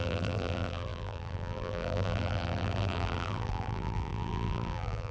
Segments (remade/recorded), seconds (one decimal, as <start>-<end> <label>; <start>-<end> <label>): 0.0-5.1 remade